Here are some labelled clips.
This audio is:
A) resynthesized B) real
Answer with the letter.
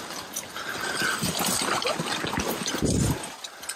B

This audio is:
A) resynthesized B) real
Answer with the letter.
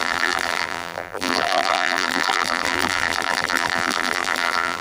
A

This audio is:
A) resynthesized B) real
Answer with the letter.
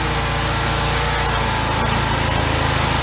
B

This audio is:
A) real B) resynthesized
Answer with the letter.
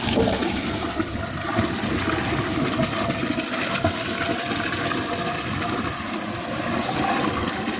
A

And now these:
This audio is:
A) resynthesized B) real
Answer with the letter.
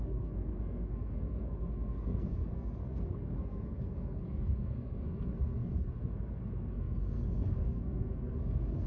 A